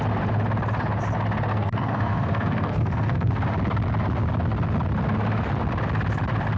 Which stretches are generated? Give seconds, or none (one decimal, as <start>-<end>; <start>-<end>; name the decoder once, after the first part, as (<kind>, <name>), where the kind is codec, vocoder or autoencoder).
1.5-3.3 (codec, SNAC)